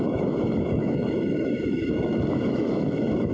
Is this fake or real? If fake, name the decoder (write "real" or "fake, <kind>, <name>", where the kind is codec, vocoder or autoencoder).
fake, autoencoder, DAC-VAE